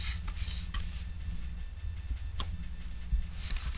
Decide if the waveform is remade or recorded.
recorded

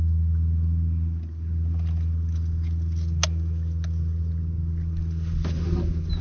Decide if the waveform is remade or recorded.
recorded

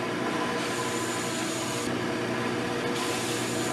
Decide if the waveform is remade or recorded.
recorded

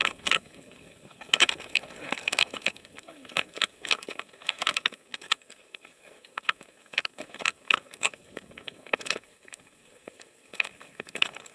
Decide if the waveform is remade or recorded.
remade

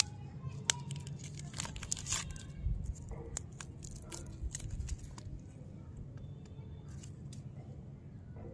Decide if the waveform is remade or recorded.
recorded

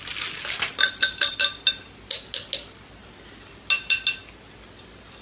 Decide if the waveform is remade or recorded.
recorded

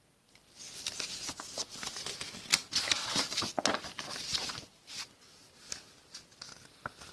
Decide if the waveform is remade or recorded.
recorded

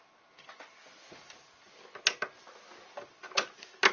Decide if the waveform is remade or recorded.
recorded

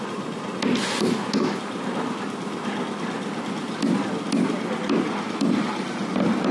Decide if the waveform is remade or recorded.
recorded